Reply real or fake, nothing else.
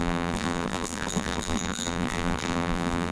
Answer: fake